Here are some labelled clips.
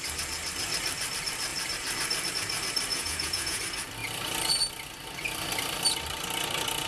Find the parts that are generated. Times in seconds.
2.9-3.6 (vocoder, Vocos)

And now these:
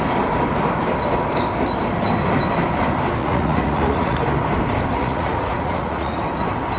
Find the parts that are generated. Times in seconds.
3.2-4.2 (vocoder, Vocos); 5.0-6.2

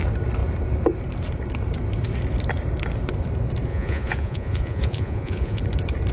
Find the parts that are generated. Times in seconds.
3.7-5.6 (vocoder, Vocos)

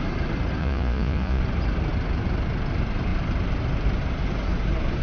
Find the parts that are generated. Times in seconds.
0.6-1.4 (vocoder, Vocos)

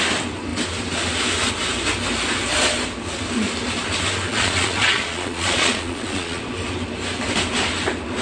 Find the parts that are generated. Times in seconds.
4.3-6.4 (vocoder, Vocos)

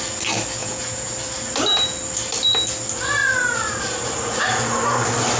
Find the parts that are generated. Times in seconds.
0.6-1.1 (vocoder, Vocos)